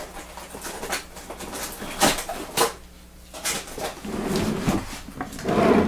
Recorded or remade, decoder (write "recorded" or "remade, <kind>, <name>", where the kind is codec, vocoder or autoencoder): recorded